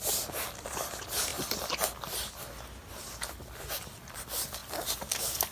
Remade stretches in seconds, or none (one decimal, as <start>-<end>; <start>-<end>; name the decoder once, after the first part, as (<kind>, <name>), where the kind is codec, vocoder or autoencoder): none